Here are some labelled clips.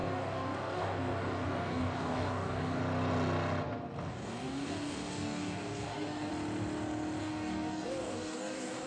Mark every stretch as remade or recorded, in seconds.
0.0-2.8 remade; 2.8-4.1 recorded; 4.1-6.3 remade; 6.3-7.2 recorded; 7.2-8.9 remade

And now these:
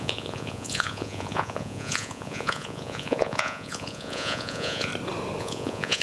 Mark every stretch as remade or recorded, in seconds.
0.0-4.9 remade; 4.9-5.4 recorded; 5.4-6.0 remade

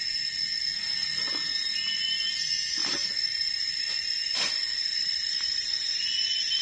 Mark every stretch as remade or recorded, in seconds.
0.0-2.8 recorded; 2.8-3.9 remade; 3.9-4.9 recorded; 4.9-6.6 remade

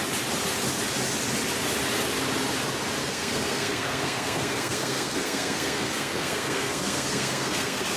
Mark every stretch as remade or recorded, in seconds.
0.0-3.0 recorded; 3.0-8.0 remade

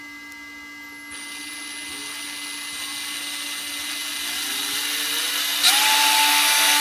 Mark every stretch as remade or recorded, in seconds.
0.0-6.2 recorded; 6.2-6.8 remade

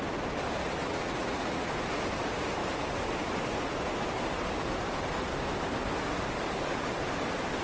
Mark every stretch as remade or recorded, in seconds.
0.0-0.6 recorded; 0.6-1.7 remade; 1.7-7.6 recorded